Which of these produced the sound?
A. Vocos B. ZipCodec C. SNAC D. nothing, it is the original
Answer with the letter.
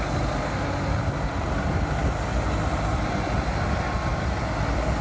D